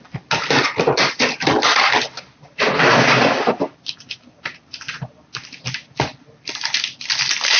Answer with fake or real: real